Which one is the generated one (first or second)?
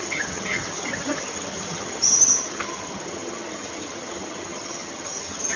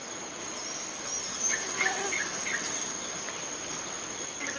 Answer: first